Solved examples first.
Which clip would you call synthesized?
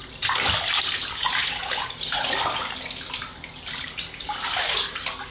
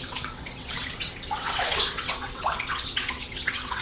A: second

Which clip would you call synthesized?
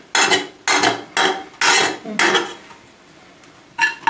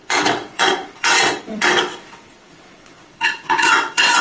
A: second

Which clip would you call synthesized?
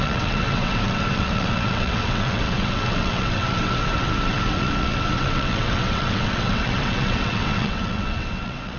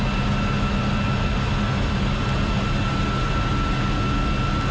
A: first